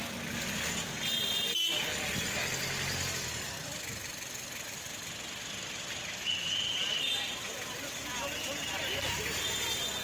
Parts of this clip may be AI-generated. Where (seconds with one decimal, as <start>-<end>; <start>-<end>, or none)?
none